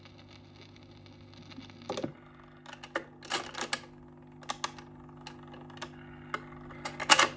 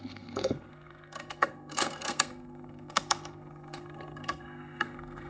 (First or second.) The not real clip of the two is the second